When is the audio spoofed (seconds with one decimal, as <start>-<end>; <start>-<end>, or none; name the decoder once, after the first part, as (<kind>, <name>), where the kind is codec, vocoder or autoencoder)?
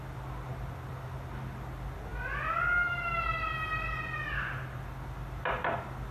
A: none